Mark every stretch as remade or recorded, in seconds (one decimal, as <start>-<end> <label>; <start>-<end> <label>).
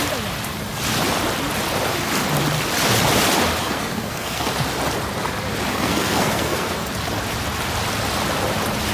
0.0-3.6 recorded; 3.6-4.5 remade; 4.5-5.7 recorded; 5.7-6.9 remade; 6.9-8.9 recorded